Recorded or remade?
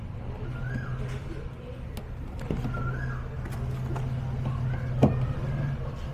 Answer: recorded